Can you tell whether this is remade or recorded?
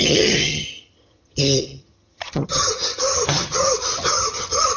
remade